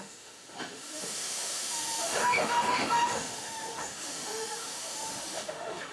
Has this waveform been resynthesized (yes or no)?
yes